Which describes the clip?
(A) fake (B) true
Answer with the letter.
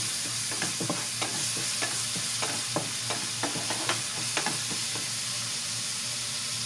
B